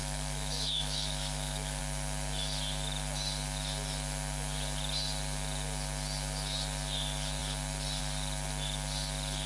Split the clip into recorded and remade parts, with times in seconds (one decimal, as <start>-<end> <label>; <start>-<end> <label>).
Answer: 0.0-1.8 remade; 1.8-9.5 recorded